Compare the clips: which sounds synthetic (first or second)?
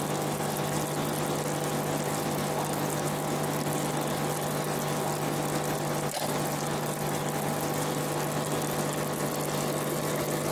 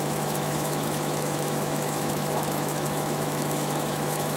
second